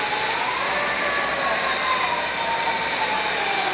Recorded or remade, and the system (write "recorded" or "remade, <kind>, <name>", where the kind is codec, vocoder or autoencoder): recorded